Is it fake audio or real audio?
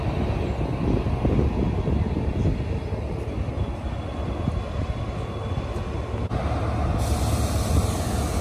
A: real